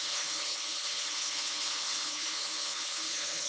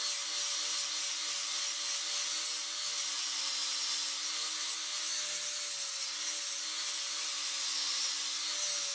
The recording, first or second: second